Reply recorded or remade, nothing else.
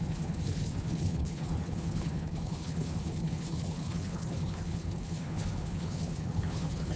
remade